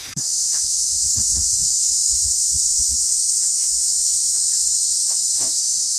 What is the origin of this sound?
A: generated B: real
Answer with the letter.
A